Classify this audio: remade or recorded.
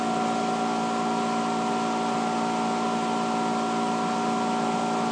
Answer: recorded